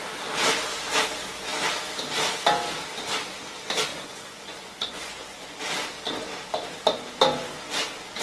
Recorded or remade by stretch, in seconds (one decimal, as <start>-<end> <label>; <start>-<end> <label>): 0.0-3.9 recorded; 3.9-5.6 remade; 5.6-8.2 recorded